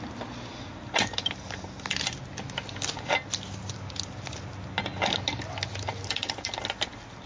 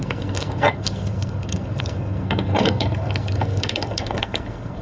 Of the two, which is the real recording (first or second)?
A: first